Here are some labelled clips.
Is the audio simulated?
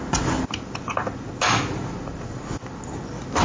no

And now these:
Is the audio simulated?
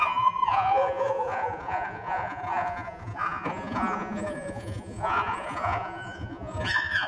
yes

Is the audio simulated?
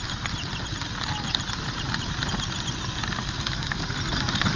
no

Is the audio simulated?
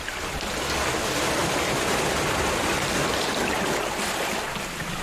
no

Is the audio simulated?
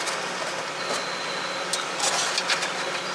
no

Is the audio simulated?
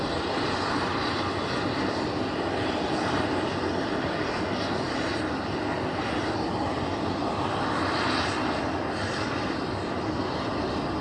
no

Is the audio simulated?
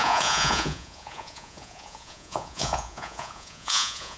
yes